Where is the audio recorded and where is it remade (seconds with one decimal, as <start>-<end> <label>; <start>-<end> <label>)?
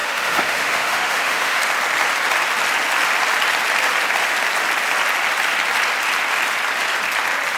0.0-1.6 remade; 1.6-7.6 recorded